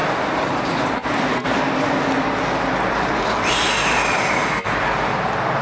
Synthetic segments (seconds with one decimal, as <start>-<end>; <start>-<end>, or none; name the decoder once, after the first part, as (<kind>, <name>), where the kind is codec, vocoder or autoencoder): none